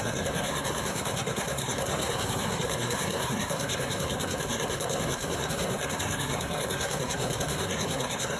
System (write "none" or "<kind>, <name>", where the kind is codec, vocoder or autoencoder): codec, SNAC